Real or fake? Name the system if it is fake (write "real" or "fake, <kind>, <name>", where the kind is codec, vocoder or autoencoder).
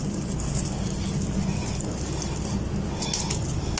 real